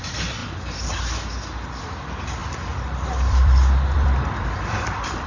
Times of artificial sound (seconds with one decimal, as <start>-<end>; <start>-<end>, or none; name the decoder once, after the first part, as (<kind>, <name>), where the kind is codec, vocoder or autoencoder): 0.4-1.0 (vocoder, BigVGAN v2); 2.4-5.3